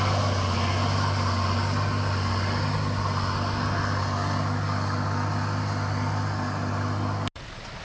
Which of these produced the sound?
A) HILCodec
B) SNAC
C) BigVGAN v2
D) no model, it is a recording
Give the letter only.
D